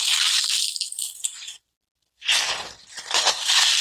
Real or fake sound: real